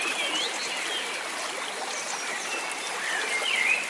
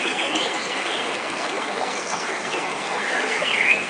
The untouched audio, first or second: first